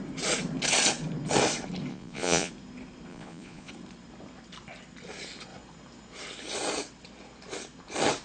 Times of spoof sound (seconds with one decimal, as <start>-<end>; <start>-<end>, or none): 1.9-2.5; 3.1-3.7